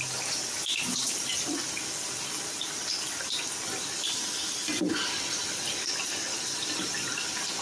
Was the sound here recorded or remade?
recorded